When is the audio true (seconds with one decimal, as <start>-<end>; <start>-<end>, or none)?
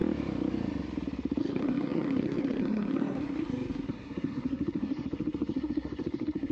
0.0-1.4